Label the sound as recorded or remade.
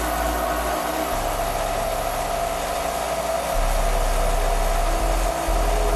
recorded